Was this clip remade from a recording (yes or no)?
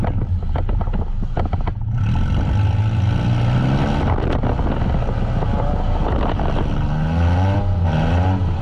no